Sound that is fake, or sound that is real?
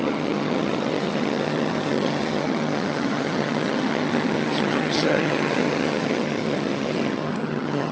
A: fake